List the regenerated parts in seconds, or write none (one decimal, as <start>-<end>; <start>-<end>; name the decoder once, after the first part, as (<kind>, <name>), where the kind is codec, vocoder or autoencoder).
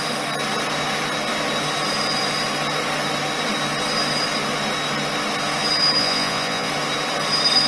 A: 6.0-6.7 (vocoder, Vocos)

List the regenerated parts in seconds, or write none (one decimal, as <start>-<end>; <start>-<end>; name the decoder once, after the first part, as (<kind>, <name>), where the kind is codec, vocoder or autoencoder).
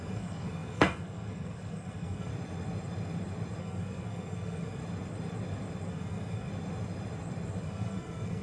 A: 0.0-2.3 (codec, SNAC); 3.6-4.8; 5.9-6.5; 7.6-8.4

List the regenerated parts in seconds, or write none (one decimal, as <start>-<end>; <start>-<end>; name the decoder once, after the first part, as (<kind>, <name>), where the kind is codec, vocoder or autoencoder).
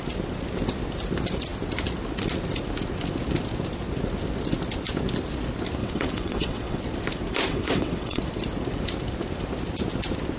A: 5.8-6.8 (vocoder, WaveNeXt); 7.5-8.2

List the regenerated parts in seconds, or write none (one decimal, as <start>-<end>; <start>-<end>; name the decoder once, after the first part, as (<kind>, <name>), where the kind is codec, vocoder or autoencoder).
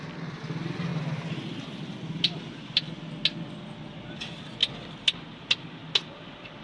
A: none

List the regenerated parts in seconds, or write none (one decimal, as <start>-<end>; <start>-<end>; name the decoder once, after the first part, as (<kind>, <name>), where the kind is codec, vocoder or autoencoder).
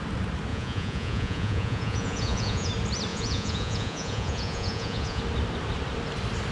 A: 0.5-2.7 (vocoder, Vocos); 3.1-5.2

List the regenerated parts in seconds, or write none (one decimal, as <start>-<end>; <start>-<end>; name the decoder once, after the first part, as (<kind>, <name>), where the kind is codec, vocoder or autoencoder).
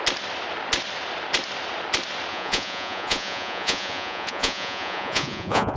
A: 2.3-5.8 (vocoder, Vocos)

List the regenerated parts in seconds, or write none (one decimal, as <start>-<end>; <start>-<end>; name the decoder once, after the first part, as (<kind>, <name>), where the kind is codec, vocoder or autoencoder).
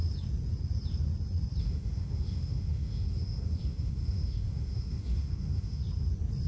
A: 1.6-5.8 (autoencoder, DAC-VAE)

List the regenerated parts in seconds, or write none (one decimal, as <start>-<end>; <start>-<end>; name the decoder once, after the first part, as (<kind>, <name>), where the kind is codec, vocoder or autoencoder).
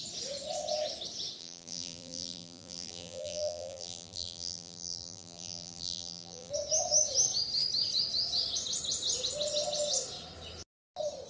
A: 1.4-6.5 (vocoder, BigVGAN v2)